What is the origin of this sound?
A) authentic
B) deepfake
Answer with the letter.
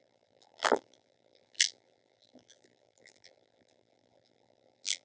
B